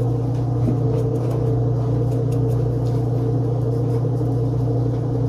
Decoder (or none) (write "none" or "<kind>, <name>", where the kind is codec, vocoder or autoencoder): none